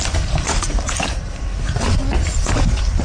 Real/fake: real